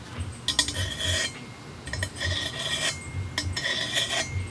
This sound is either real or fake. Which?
real